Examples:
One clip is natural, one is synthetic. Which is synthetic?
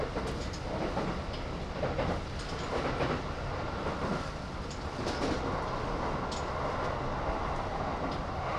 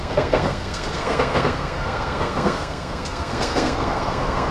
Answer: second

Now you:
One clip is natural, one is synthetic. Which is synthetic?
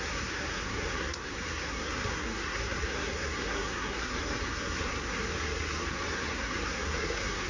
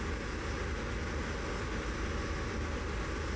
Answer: first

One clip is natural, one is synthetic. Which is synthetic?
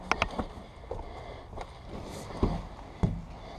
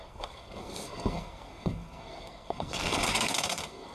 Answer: second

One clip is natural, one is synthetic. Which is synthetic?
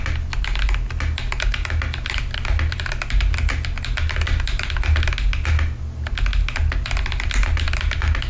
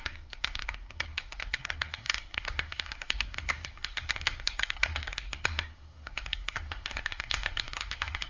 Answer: second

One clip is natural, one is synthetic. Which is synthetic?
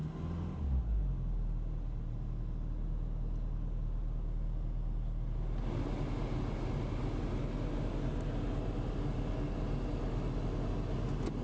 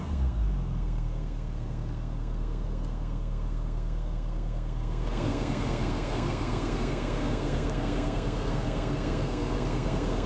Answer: second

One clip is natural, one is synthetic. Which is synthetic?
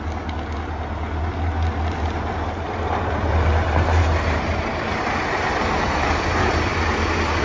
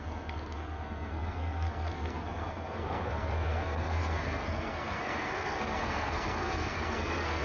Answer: second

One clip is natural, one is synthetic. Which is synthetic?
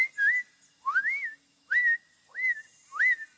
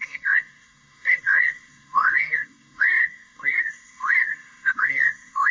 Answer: second